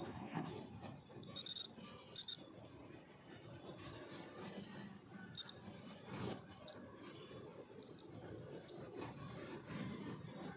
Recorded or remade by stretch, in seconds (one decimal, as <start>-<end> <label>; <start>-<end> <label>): 0.0-0.5 remade; 0.5-10.6 recorded